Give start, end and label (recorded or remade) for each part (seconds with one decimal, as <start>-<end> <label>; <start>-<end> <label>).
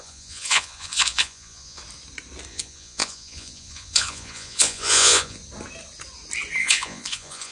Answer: 0.0-1.8 remade; 1.8-2.5 recorded; 2.5-5.4 remade; 5.4-6.6 recorded; 6.6-7.5 remade